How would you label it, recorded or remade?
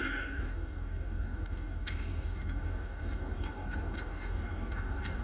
remade